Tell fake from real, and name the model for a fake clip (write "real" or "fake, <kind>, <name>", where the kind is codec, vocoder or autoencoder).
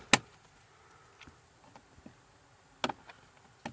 real